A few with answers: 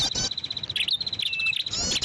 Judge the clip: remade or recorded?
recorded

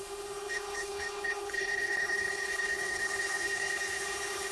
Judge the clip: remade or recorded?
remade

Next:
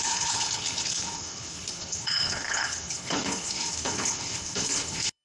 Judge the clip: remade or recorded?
remade